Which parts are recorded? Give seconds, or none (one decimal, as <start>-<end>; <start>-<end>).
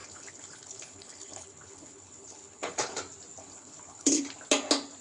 3.0-3.4; 4.2-5.0